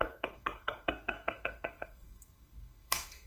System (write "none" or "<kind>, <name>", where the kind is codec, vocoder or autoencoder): codec, SNAC